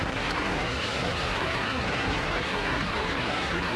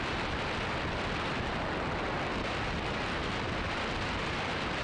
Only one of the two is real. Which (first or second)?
second